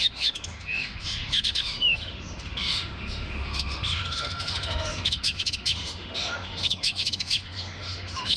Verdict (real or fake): fake